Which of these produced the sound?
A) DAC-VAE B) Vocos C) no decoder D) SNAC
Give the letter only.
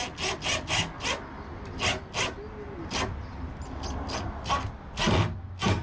C